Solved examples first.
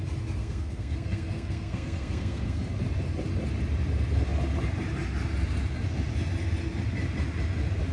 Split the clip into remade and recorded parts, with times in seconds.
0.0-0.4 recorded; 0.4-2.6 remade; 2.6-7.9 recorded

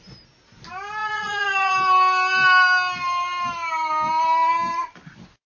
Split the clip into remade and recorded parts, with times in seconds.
0.0-1.0 recorded; 1.0-1.7 remade; 1.7-5.6 recorded

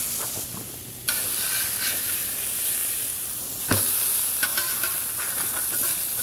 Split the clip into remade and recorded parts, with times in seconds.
0.0-6.2 recorded

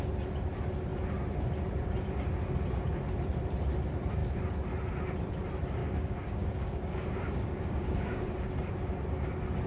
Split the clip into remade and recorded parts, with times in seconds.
0.0-5.8 recorded; 5.8-8.5 remade; 8.5-9.7 recorded

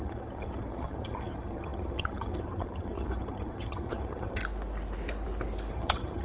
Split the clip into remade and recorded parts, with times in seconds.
0.0-4.4 remade; 4.4-5.7 recorded; 5.7-6.2 remade